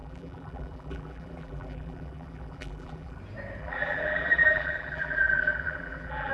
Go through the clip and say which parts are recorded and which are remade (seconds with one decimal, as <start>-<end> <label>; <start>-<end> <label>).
0.0-3.2 remade; 3.2-3.6 recorded; 3.6-6.3 remade